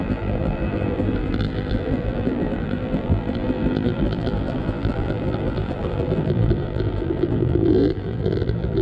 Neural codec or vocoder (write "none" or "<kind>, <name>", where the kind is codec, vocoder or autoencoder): vocoder, BigVGAN v2